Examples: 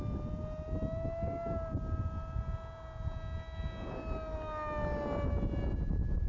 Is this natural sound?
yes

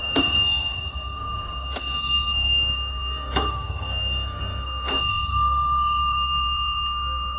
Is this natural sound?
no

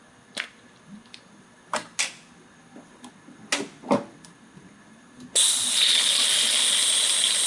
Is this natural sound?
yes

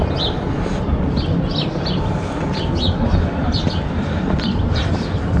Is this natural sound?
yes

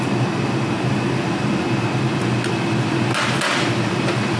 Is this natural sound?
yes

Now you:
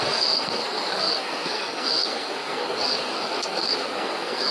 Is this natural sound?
no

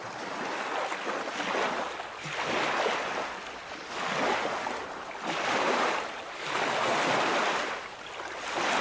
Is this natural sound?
yes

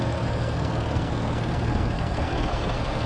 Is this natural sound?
no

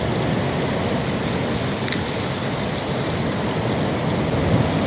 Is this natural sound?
yes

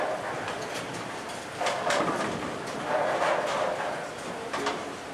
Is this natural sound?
yes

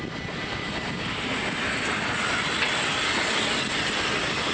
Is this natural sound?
yes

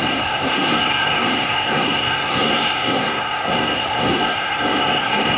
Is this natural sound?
no